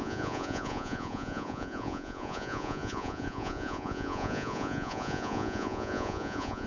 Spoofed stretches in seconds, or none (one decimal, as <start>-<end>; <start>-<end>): 0.0-6.7